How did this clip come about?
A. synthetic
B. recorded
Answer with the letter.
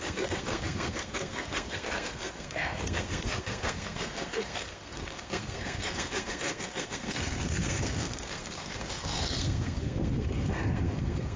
A